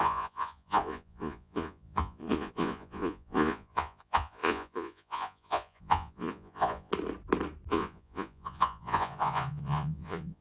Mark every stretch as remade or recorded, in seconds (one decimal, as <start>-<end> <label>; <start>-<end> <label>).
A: 0.0-6.9 remade; 6.9-7.7 recorded; 7.7-10.4 remade